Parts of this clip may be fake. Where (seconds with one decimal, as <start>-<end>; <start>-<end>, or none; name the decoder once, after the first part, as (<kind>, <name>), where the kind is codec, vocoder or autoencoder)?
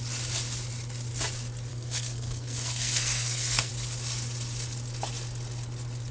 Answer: 1.7-3.7 (codec, SNAC)